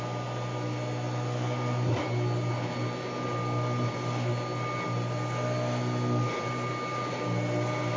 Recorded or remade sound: recorded